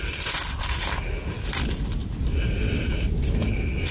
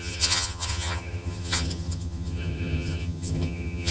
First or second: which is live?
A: first